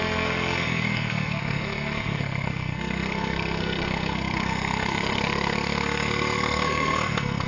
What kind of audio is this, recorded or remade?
remade